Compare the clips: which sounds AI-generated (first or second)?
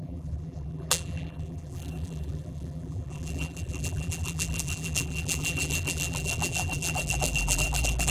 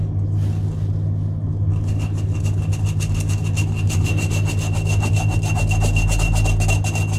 first